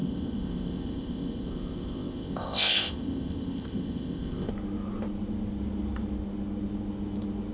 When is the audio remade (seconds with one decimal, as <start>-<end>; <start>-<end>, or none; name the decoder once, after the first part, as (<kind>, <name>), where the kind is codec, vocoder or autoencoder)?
0.0-4.5 (codec, ZipCodec)